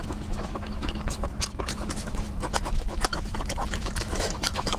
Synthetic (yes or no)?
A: yes